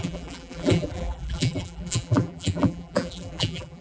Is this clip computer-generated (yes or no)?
yes